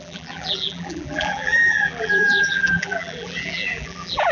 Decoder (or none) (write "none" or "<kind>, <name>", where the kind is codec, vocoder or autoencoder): vocoder, BigVGAN v2